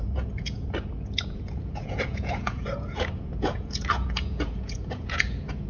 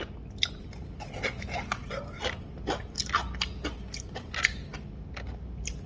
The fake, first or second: first